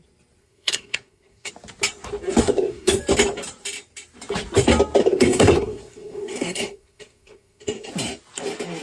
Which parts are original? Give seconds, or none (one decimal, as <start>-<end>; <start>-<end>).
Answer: 0.0-0.4; 1.5-2.4; 3.0-5.0; 7.9-8.8